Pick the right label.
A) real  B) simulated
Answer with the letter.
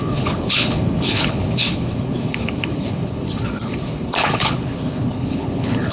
B